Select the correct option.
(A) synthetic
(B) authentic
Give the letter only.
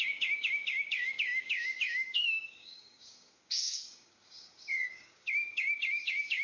A